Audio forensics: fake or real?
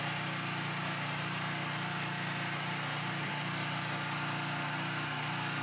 real